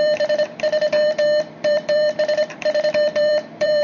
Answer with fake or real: fake